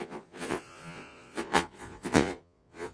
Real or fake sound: fake